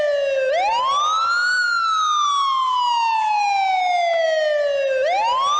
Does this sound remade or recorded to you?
recorded